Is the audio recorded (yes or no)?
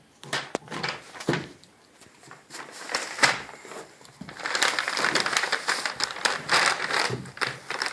no